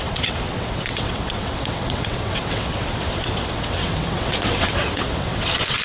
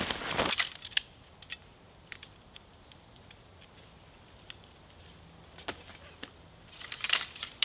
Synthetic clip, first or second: first